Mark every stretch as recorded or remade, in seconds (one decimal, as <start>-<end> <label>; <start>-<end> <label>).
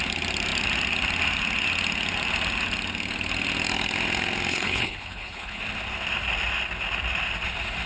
0.0-4.5 recorded; 4.5-5.6 remade; 5.6-7.9 recorded